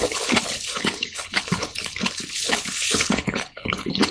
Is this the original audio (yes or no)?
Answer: no